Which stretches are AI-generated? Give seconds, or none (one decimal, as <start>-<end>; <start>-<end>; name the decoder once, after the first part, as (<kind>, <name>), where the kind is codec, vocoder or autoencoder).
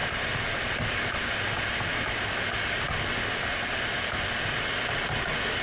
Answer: none